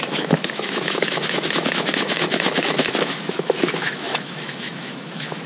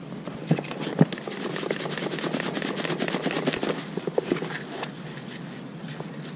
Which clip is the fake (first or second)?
first